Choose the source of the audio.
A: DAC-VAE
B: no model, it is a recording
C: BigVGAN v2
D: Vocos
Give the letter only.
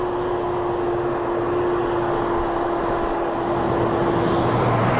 B